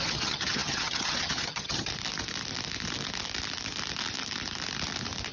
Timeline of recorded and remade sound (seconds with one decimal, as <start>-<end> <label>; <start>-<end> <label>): 0.0-1.9 remade; 1.9-5.3 recorded